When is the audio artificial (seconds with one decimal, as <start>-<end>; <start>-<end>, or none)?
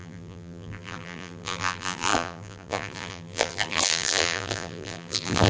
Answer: 0.0-5.5